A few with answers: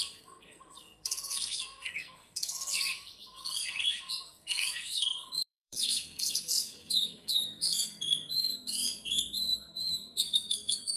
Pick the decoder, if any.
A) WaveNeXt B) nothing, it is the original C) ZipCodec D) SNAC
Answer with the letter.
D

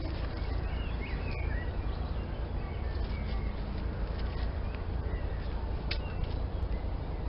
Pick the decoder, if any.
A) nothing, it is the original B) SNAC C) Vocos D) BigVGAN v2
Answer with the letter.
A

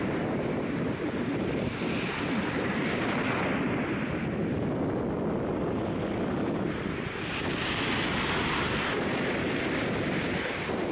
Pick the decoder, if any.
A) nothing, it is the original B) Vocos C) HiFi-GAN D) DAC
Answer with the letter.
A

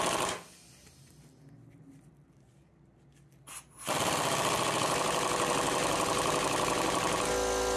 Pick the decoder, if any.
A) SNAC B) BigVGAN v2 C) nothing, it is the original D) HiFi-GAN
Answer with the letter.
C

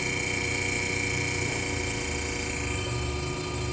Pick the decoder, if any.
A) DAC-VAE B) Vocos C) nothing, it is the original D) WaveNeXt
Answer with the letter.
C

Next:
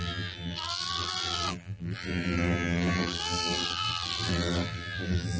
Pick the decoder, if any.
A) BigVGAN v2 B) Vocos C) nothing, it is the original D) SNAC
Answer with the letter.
A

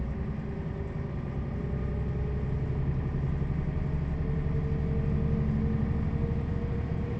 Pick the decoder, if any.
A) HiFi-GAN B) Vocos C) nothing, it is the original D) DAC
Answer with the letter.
C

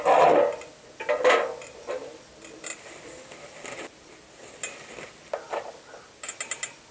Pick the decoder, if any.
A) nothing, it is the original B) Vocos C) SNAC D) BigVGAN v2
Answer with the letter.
A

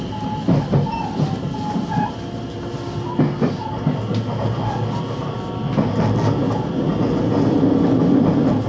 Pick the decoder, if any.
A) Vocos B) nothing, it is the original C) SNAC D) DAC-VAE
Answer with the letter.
B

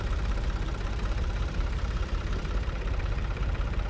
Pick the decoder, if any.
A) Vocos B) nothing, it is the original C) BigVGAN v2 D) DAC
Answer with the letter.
C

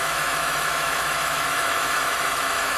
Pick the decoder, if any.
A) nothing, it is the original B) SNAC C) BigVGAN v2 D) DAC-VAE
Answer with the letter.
D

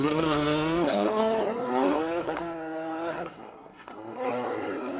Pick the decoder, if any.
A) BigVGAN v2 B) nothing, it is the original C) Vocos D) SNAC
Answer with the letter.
D